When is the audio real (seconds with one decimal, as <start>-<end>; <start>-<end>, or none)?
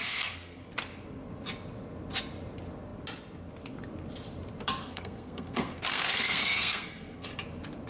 0.6-4.8; 7.3-7.9